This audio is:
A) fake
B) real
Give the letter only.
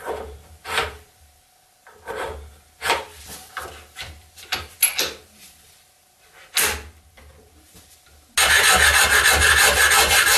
B